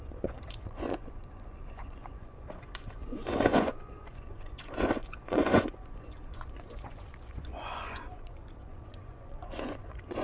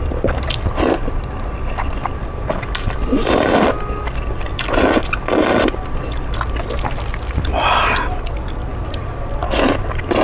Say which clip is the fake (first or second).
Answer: first